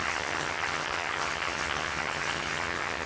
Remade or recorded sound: remade